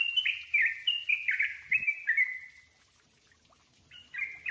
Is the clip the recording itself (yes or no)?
yes